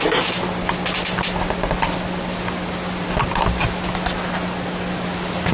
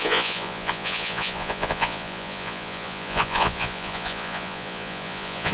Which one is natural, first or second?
first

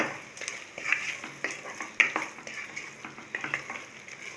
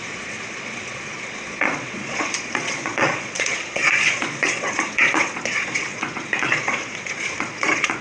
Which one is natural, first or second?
first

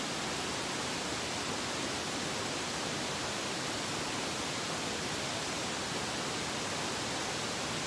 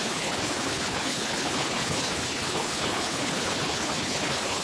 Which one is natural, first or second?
first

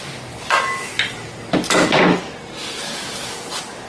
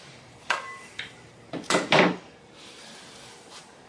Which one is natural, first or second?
first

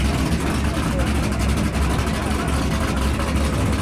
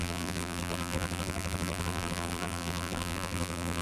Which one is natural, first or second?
first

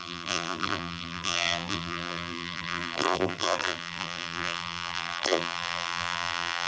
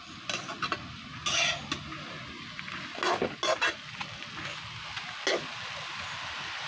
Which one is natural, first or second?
second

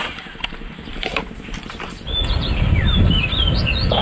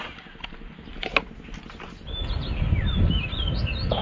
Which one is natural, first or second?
second